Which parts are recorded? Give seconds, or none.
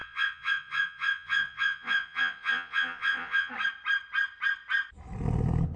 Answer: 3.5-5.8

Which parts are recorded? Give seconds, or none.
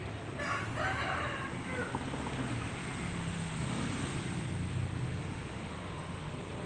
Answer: 0.0-3.1; 4.0-5.1; 6.3-6.7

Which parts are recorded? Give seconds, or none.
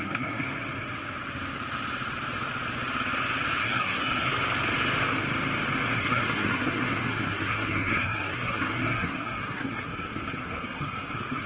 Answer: 0.4-3.6; 4.3-6.0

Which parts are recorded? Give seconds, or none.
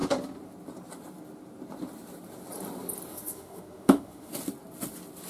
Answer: 0.0-3.1; 4.3-5.3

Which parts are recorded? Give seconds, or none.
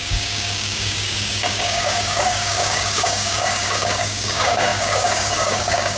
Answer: none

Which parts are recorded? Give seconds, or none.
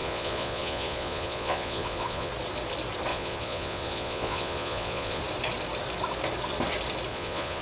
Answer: 2.3-3.1; 5.2-7.1